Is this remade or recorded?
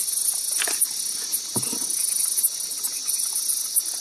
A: recorded